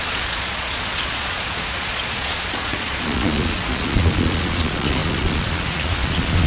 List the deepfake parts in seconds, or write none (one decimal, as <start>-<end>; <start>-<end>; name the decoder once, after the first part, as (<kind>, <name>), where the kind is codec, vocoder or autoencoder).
0.0-6.5 (vocoder, Vocos)